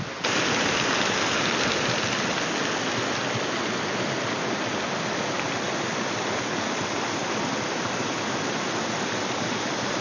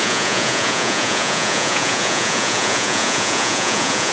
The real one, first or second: first